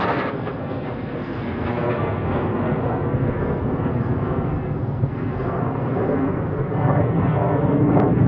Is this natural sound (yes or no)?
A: no